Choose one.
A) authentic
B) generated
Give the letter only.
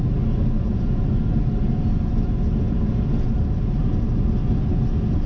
A